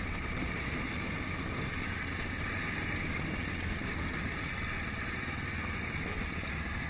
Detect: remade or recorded recorded